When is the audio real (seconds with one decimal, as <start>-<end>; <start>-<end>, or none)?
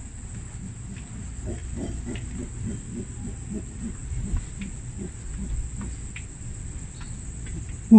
0.0-1.6; 3.3-4.0; 5.1-8.0